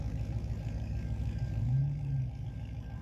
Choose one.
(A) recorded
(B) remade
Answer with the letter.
B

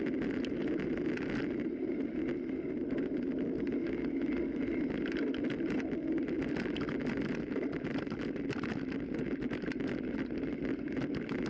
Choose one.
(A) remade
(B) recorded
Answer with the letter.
B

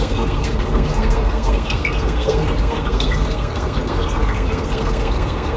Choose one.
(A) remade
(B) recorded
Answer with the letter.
A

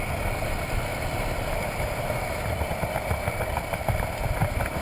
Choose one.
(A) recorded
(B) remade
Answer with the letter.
A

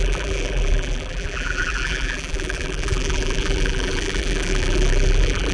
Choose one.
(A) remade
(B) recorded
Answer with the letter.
A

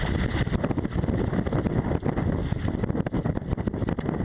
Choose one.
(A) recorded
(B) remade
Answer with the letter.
A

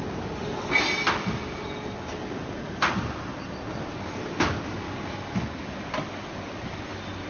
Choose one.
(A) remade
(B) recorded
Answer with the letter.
B